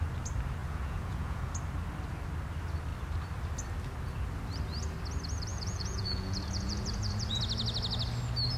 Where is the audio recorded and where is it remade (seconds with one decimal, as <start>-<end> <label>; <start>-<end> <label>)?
0.0-0.6 recorded; 0.6-1.5 remade; 1.5-5.5 recorded; 5.5-7.4 remade; 7.4-8.6 recorded